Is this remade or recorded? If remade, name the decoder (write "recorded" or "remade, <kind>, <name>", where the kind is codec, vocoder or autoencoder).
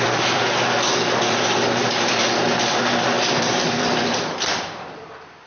remade, vocoder, BigVGAN v2